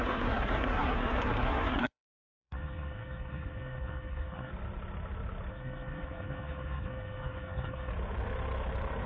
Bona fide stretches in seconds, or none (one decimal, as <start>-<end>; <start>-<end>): 4.5-5.5; 7.9-9.1